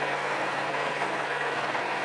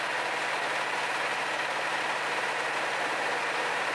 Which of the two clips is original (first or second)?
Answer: second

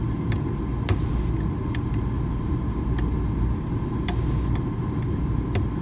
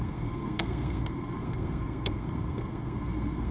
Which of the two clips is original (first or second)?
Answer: first